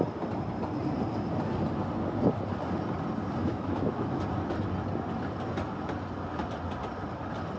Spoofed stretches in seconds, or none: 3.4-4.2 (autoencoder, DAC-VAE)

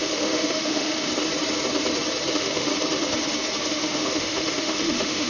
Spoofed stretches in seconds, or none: 0.0-1.1 (autoencoder, DAC-VAE); 2.3-2.7; 3.7-5.3

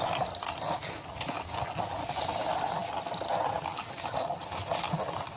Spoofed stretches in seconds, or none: none

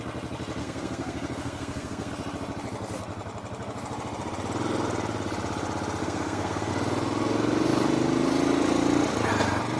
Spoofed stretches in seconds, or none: 0.6-2.1 (codec, SNAC); 6.0-6.7

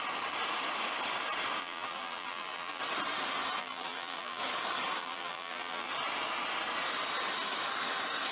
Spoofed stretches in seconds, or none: 1.6-2.8 (vocoder, BigVGAN v2); 3.6-4.4; 5.0-5.9

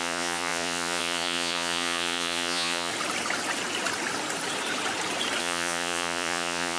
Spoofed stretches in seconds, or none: 0.0-2.9 (vocoder, Vocos); 5.4-6.8